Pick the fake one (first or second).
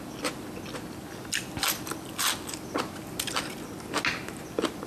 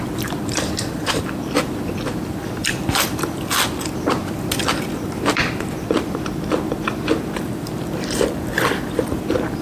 second